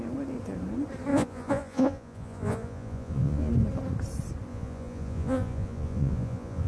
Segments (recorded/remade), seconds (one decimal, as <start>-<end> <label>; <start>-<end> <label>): 0.0-1.1 recorded; 1.1-3.5 remade; 3.5-4.5 recorded; 4.5-6.7 remade